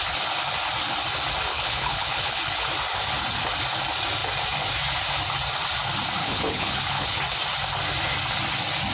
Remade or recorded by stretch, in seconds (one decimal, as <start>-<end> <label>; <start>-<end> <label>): 0.0-1.5 recorded; 1.5-2.4 remade; 2.4-6.2 recorded; 6.2-7.2 remade; 7.2-8.9 recorded